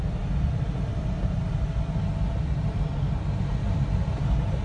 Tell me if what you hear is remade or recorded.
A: recorded